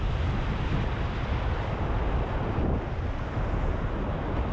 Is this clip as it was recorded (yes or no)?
yes